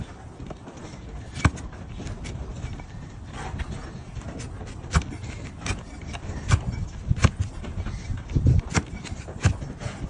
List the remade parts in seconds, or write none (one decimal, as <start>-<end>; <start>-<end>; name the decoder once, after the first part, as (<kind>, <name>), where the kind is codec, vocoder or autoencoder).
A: none